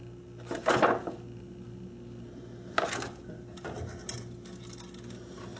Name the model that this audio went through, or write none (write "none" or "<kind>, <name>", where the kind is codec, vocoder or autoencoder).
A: none